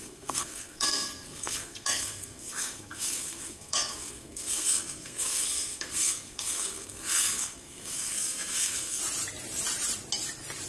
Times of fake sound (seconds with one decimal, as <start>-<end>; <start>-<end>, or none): 0.0-9.0

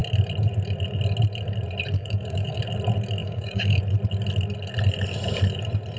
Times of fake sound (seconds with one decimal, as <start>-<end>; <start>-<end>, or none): 2.0-2.6; 3.2-3.8

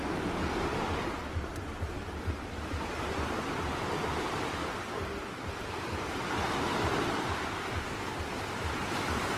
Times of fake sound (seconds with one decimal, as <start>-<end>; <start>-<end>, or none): none

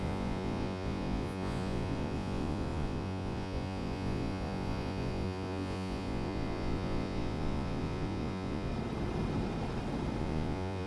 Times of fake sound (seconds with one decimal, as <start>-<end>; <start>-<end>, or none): 0.0-8.7; 10.2-10.9